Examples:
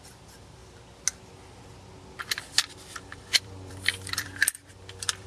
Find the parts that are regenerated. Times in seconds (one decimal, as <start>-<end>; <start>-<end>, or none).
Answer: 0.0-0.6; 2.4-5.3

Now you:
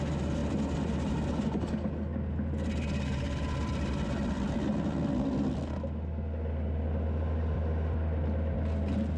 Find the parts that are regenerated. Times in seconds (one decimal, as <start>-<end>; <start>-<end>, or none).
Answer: none

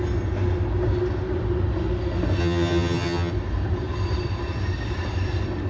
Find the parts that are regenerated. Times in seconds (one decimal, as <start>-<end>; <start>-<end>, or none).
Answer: 2.4-3.3

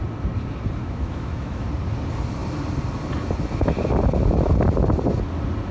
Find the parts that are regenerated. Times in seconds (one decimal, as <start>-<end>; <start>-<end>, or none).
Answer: 0.8-1.7